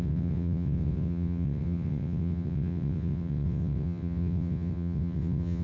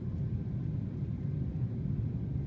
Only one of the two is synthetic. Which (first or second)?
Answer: first